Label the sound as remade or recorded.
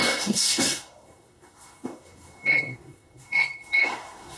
remade